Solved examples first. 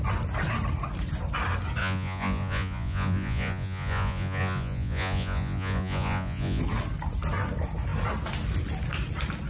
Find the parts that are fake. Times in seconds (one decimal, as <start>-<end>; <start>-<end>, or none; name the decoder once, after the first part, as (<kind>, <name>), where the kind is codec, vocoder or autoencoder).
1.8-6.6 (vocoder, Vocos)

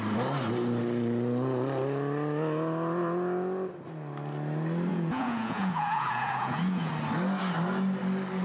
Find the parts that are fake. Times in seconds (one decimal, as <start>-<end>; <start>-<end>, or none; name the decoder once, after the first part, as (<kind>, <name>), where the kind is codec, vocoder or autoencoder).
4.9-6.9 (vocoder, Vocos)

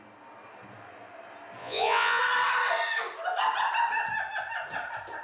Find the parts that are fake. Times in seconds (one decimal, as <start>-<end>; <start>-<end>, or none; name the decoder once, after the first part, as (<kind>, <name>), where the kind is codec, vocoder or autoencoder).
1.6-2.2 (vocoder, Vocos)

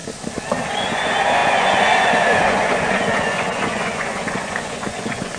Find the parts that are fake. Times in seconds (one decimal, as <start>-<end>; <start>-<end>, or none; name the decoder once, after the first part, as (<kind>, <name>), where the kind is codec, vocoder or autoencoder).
0.7-5.4 (vocoder, Vocos)